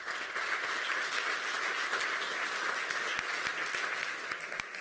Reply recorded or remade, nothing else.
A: recorded